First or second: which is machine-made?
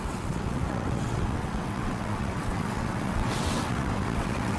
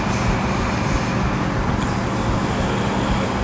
first